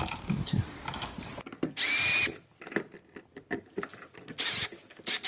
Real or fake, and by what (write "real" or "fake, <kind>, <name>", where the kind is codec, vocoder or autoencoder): real